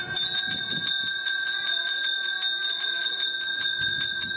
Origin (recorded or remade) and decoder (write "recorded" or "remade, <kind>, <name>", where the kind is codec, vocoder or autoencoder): recorded